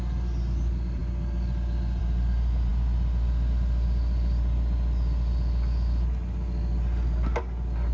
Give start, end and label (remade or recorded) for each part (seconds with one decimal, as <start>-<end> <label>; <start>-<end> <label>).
0.0-7.9 recorded